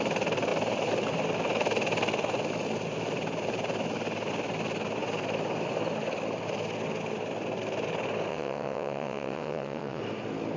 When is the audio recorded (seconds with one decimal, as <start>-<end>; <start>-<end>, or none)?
0.0-8.3; 10.0-10.6